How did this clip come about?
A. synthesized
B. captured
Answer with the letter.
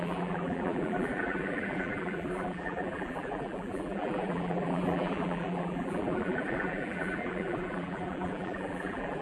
A